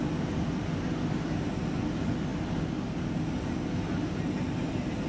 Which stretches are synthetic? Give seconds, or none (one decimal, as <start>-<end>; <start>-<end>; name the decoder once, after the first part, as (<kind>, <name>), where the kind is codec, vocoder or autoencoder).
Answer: none